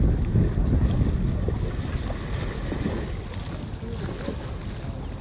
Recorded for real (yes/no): yes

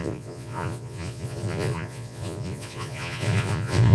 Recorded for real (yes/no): no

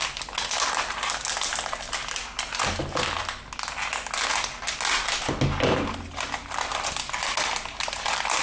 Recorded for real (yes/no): yes